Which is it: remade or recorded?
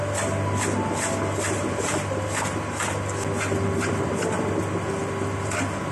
recorded